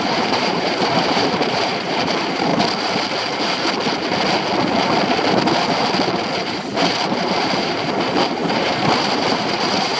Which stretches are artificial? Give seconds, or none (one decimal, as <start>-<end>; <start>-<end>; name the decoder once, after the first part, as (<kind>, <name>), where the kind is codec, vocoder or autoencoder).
0.0-2.5 (vocoder, BigVGAN v2); 6.4-10.0